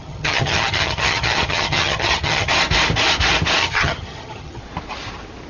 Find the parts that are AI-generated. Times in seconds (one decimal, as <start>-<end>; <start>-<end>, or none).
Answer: 0.0-2.5; 3.6-4.6